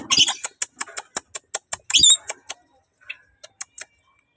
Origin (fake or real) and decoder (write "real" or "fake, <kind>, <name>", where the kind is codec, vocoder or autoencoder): real